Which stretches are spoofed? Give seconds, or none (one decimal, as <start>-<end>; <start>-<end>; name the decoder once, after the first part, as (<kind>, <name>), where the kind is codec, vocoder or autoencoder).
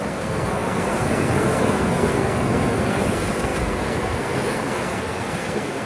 0.0-5.9 (codec, SNAC)